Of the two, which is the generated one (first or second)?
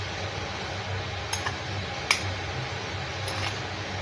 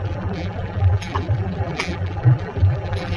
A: second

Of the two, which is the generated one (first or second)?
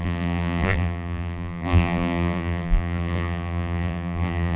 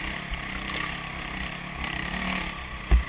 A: first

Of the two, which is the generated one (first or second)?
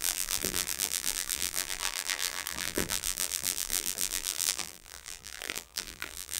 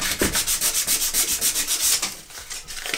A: first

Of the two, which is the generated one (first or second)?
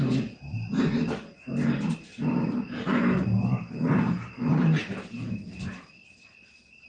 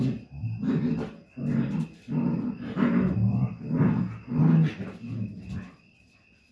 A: first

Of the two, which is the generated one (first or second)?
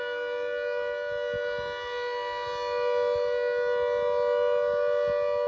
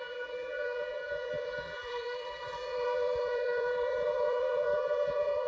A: second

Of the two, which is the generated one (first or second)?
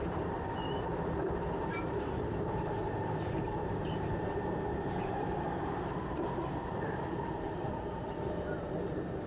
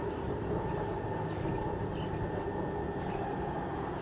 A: first